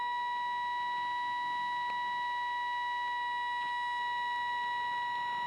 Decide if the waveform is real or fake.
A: real